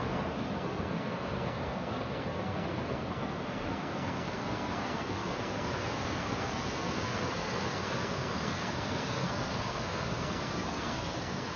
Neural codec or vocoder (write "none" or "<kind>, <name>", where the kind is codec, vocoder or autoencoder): codec, SNAC